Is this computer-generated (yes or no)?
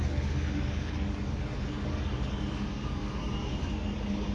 yes